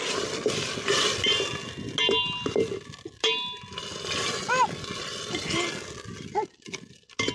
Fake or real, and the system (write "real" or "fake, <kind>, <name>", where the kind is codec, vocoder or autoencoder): real